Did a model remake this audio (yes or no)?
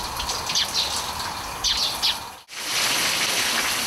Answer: no